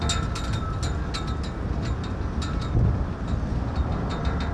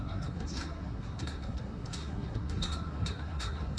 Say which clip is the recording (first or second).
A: first